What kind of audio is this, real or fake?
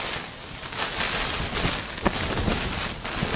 real